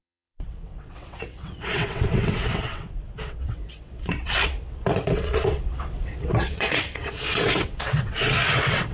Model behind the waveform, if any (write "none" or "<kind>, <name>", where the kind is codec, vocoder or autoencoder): vocoder, WaveNeXt